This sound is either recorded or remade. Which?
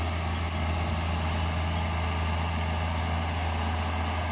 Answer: recorded